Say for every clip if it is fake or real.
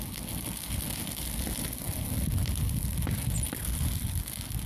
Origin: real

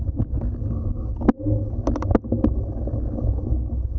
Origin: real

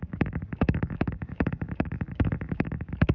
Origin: fake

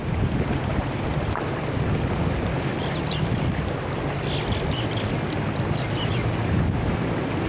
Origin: real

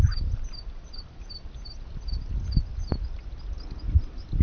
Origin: real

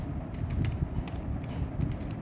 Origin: real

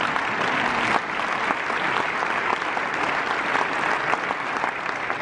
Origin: real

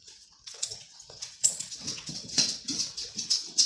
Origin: fake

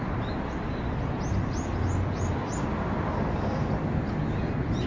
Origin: real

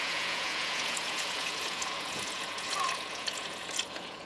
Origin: fake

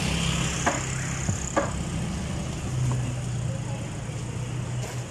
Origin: real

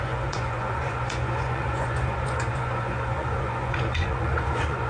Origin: fake